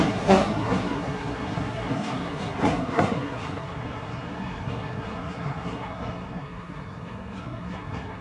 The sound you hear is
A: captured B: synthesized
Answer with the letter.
B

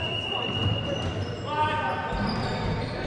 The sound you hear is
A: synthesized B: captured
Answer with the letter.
B